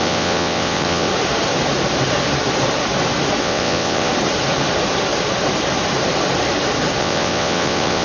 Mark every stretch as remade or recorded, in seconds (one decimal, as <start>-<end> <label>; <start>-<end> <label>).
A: 0.0-1.1 remade; 1.1-3.4 recorded; 3.4-4.1 remade; 4.1-7.0 recorded; 7.0-8.0 remade